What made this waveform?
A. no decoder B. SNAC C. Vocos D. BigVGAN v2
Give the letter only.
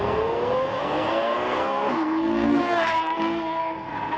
B